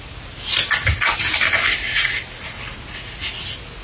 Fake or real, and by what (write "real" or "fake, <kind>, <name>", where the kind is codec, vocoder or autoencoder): real